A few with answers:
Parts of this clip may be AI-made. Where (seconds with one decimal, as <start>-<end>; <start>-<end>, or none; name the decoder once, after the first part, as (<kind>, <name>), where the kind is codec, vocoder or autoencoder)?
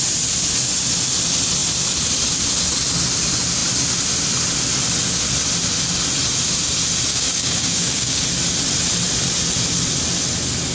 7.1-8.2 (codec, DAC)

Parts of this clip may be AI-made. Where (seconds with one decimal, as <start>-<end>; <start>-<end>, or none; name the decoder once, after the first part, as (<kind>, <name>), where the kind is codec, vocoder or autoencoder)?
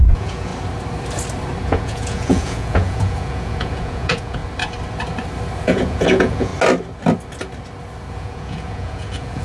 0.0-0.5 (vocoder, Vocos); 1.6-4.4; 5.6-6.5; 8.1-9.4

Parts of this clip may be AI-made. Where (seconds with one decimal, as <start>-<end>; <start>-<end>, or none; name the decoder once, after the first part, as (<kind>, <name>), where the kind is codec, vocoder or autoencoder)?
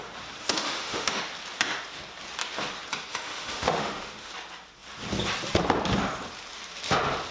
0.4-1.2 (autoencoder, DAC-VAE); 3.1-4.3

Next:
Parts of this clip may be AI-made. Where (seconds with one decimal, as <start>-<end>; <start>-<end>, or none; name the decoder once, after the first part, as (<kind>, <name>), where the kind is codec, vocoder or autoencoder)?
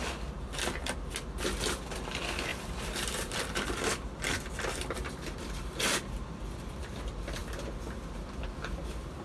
2.5-6.7 (vocoder, BigVGAN v2)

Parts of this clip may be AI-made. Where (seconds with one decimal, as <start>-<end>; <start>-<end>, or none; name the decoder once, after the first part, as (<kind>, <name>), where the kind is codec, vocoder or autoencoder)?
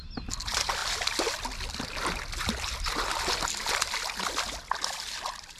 none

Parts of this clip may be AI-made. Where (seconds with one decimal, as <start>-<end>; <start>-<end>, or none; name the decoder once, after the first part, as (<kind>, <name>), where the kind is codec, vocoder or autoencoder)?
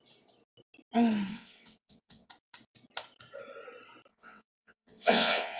1.3-2.3 (vocoder, WaveNeXt); 4.1-5.6